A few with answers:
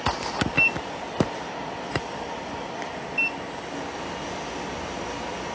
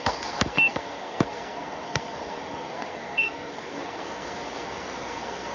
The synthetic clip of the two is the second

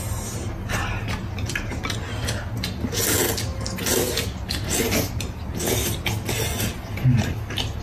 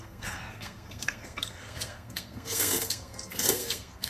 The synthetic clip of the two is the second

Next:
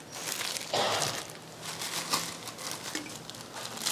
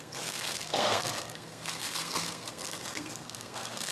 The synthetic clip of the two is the second